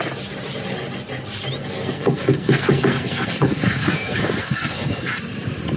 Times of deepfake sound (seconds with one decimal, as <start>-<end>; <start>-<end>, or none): 1.6-5.1